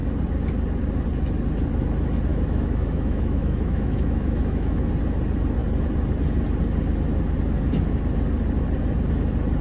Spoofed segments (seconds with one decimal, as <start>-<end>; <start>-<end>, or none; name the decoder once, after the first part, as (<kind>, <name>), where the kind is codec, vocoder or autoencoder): 2.3-4.9 (autoencoder, DAC-VAE)